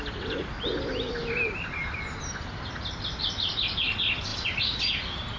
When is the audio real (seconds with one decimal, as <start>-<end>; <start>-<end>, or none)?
0.0-5.4